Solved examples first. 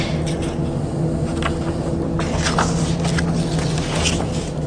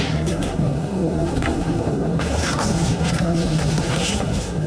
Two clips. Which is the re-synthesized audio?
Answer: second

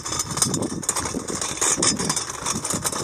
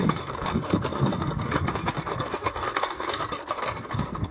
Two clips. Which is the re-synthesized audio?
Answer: second